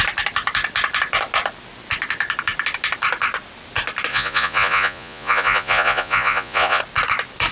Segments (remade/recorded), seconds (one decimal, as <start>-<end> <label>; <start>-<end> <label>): 0.0-4.1 recorded; 4.1-6.8 remade; 6.8-7.5 recorded